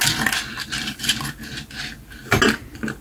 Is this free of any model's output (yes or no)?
yes